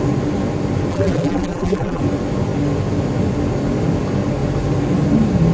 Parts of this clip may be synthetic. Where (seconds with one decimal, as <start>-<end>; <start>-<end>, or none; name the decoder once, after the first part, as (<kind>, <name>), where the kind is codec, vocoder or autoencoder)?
0.9-2.0 (vocoder, BigVGAN v2)